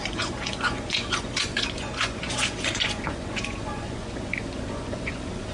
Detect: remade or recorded remade